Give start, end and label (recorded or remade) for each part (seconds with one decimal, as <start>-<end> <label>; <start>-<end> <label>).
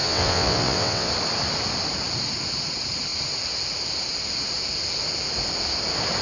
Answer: 0.0-1.1 remade; 1.1-6.2 recorded